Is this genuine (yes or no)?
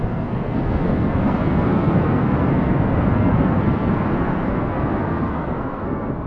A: no